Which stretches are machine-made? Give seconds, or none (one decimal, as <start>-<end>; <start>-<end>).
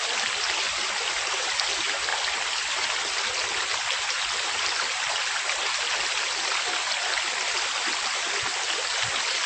none